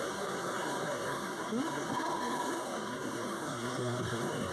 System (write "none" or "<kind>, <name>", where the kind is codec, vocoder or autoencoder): codec, SNAC